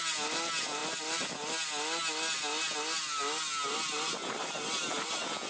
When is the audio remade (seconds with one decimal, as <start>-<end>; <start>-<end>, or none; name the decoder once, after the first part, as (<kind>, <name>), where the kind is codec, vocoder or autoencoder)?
none